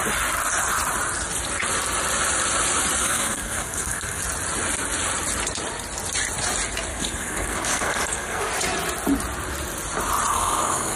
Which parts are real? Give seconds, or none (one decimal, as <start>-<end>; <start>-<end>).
0.0-3.0; 4.2-6.9; 8.5-10.3